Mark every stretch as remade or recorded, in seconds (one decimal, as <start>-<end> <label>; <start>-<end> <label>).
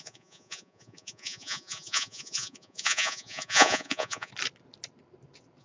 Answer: 0.0-4.3 remade; 4.3-5.6 recorded